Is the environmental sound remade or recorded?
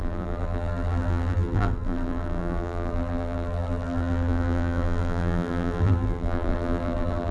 remade